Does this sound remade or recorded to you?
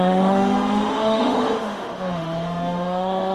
remade